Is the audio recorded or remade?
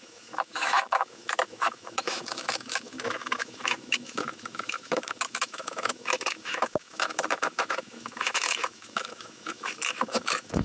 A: remade